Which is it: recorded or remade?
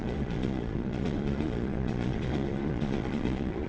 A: remade